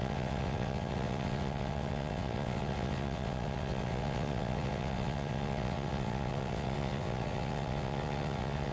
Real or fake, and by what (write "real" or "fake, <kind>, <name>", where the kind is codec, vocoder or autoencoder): fake, vocoder, WaveNeXt